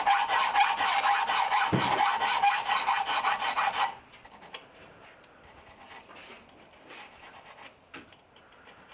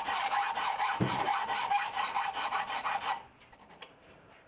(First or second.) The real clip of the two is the first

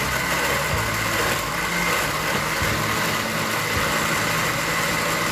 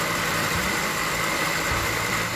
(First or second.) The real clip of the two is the first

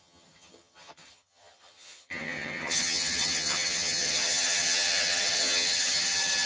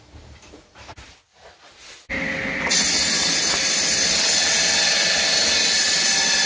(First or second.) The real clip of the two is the second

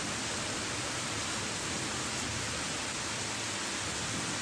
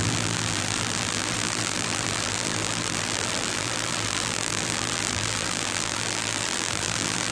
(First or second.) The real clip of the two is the first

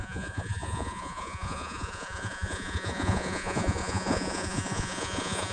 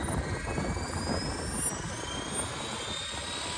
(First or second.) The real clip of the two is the second